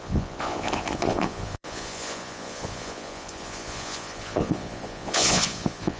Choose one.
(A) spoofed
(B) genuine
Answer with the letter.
A